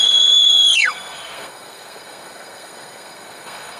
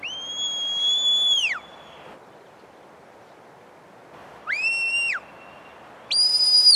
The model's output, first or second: first